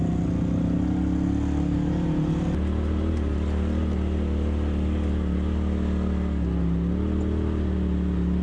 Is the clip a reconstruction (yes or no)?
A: no